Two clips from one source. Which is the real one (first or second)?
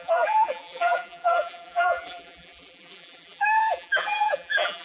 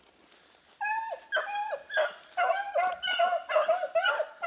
second